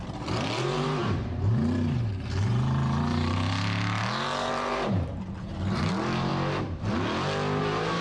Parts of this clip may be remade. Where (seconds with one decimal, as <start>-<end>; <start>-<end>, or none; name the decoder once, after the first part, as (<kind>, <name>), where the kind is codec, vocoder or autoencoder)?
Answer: 0.0-6.3 (vocoder, BigVGAN v2); 7.6-8.0